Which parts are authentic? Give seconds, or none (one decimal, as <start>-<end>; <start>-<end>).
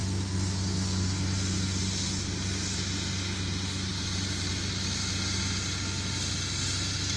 0.0-3.9; 4.5-7.2